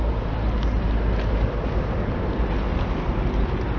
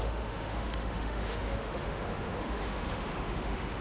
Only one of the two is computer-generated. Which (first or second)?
second